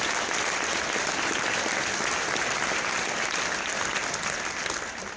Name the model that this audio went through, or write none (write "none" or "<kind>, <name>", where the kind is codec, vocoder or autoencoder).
none